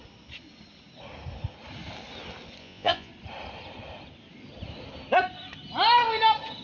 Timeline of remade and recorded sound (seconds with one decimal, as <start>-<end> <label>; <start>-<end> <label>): 0.0-2.6 recorded; 2.6-3.1 remade; 3.1-6.6 recorded